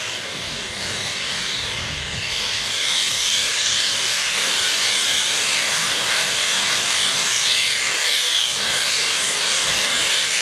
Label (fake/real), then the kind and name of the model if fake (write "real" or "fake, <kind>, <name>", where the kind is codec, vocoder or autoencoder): fake, codec, DAC